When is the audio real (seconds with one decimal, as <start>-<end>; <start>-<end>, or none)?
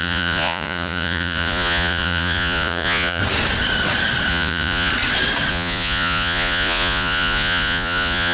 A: 3.2-4.3; 4.9-5.5